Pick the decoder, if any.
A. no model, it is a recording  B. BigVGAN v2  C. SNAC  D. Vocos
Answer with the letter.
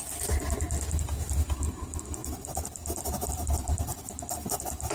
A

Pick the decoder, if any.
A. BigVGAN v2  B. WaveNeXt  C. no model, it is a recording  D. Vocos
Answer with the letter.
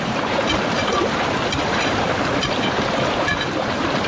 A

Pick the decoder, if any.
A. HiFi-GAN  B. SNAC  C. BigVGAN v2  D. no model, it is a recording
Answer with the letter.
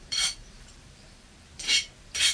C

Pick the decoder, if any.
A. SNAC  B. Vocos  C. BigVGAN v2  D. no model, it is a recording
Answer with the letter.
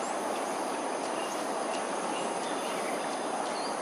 C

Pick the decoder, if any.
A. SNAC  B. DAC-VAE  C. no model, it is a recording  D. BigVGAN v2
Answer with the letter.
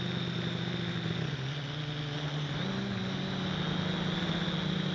C